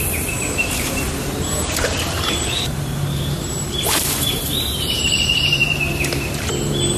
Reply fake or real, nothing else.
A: fake